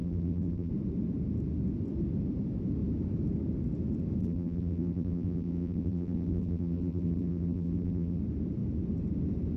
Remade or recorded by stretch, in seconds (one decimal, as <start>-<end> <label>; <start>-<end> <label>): 0.0-0.7 remade; 0.7-4.2 recorded; 4.2-8.2 remade; 8.2-9.6 recorded